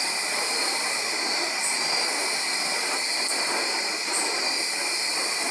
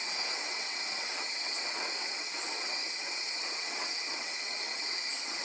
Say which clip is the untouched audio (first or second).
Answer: first